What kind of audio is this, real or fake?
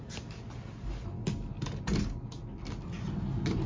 real